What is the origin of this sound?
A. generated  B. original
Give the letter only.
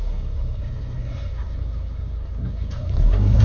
A